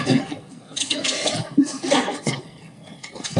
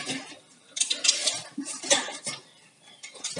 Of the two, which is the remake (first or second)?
first